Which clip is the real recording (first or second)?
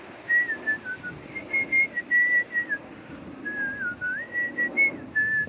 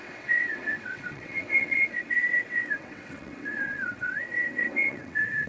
first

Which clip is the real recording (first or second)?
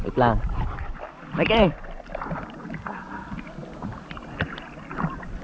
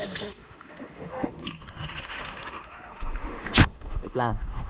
first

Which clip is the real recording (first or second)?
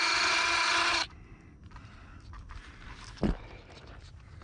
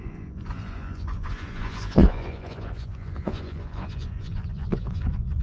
first